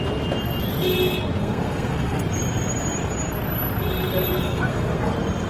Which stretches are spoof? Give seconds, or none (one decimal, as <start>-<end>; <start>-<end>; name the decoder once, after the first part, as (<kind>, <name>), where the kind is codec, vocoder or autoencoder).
1.4-2.2 (codec, SNAC); 4.4-5.1